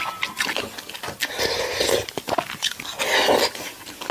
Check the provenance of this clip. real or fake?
real